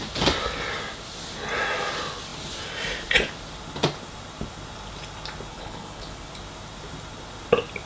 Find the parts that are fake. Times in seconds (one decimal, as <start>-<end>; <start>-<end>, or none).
5.5-6.3